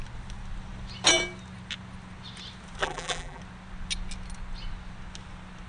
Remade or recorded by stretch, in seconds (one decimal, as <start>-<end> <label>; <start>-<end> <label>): 0.0-2.8 recorded; 2.8-3.4 remade; 3.4-5.7 recorded